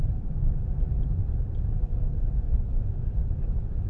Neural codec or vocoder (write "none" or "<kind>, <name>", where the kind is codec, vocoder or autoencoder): vocoder, BigVGAN v2